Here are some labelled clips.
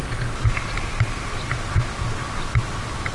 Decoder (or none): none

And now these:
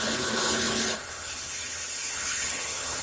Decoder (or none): codec, HILCodec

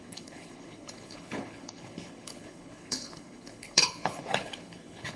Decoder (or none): codec, HILCodec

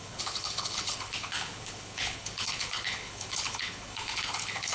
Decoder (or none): codec, HILCodec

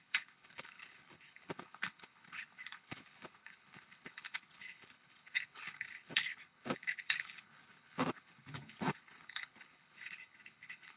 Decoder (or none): codec, HILCodec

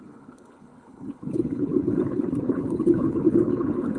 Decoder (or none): codec, HILCodec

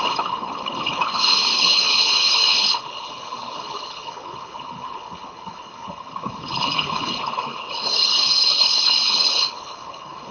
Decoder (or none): codec, HILCodec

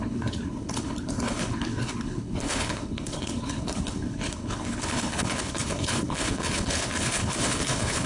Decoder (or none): codec, HILCodec